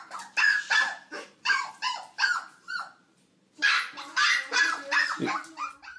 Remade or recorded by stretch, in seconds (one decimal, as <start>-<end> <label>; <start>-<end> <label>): 0.0-0.5 recorded; 0.5-1.7 remade; 1.7-6.0 recorded